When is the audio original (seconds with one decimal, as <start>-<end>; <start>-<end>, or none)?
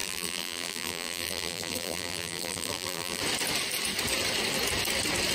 3.2-5.3